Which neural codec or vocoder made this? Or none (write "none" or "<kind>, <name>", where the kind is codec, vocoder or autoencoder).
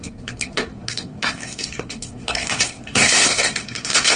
codec, SNAC